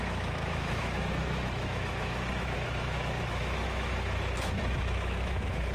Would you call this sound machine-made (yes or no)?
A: yes